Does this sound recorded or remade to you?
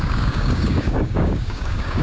remade